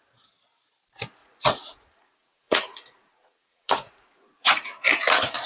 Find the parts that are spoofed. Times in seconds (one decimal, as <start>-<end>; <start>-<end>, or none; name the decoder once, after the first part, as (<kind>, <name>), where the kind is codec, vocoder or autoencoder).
1.2-4.5 (vocoder, Vocos)